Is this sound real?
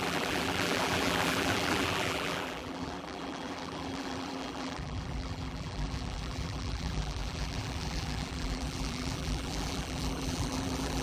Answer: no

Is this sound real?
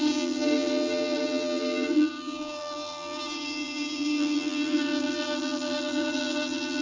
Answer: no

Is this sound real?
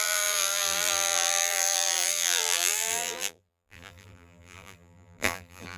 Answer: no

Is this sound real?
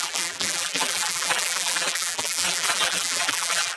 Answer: no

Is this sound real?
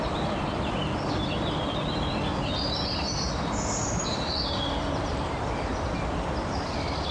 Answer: no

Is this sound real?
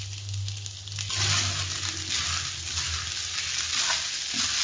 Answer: yes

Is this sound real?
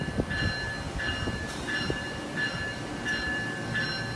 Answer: yes